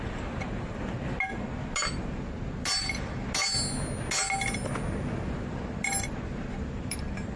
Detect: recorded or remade recorded